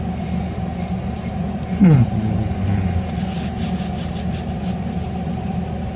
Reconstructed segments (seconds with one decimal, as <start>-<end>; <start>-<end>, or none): none